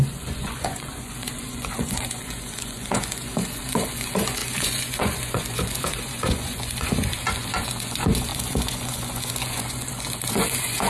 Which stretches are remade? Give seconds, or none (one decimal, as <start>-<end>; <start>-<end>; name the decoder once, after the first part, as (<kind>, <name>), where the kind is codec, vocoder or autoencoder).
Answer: 0.0-10.9 (vocoder, Vocos)